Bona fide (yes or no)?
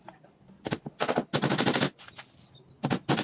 yes